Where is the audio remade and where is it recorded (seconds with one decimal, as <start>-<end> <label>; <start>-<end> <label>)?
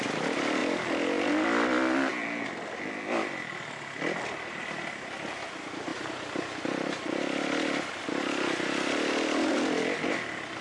0.0-0.6 recorded; 0.6-1.3 remade; 1.3-10.6 recorded